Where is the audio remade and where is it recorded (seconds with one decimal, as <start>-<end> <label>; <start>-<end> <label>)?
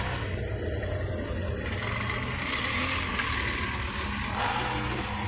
0.0-5.3 recorded